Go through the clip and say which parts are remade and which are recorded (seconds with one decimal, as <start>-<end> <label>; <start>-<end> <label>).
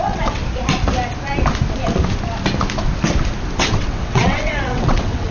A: 0.0-0.4 remade; 0.4-3.6 recorded; 3.6-5.3 remade